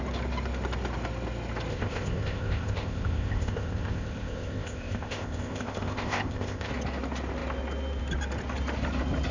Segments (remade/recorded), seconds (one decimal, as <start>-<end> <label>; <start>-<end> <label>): 0.0-1.7 recorded; 1.7-6.7 remade; 6.7-9.3 recorded